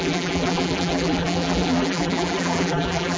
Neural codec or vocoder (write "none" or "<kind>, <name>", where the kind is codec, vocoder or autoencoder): vocoder, BigVGAN v2